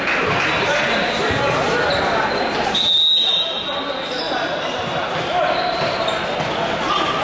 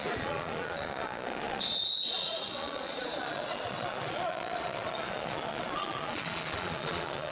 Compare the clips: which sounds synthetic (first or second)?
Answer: second